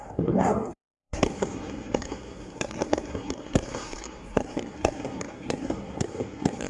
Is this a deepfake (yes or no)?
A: yes